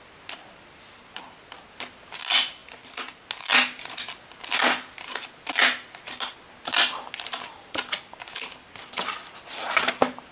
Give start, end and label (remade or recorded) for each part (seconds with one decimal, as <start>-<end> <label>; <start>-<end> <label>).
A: 0.0-10.3 recorded